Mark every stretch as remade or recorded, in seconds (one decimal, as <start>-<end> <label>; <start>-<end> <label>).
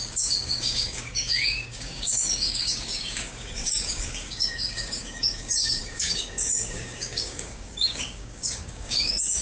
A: 0.0-9.4 remade